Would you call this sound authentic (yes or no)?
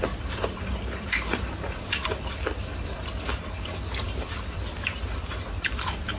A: no